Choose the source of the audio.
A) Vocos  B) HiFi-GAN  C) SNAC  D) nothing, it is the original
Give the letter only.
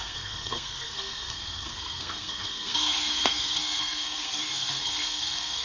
C